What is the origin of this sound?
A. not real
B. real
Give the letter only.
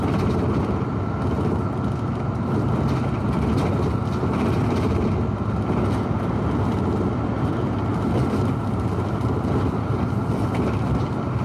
B